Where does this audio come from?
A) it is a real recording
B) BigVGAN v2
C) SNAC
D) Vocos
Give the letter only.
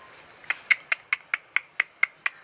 A